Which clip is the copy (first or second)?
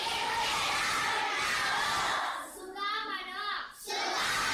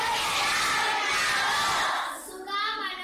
first